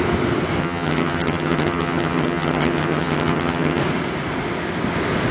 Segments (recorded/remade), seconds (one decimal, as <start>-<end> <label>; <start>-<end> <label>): 0.0-0.6 recorded; 0.6-3.8 remade; 3.8-5.3 recorded